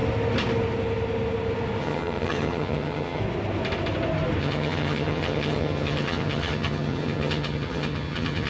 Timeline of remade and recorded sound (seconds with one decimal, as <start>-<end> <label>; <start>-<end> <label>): 0.0-1.8 recorded; 1.8-3.2 remade; 3.2-4.4 recorded; 4.4-8.5 remade